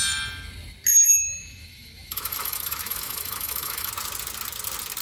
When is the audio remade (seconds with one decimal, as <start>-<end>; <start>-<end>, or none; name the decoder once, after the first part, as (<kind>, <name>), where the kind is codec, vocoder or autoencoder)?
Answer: 0.9-3.9 (autoencoder, DAC-VAE)

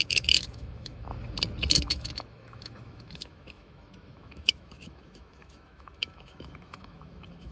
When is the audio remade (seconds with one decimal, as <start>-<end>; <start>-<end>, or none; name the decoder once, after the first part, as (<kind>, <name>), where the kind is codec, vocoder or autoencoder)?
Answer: 0.0-1.1 (autoencoder, DAC-VAE); 1.7-7.5

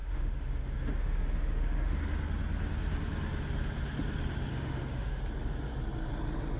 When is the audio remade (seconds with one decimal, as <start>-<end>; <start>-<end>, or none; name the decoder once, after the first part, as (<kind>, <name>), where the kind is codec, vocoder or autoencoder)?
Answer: 0.0-2.0 (autoencoder, DAC-VAE); 4.5-5.2

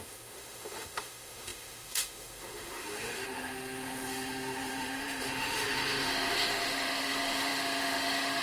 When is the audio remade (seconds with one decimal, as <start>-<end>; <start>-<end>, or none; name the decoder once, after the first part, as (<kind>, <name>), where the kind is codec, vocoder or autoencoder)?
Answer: 0.0-8.4 (autoencoder, DAC-VAE)